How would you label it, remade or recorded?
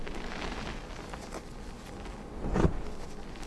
recorded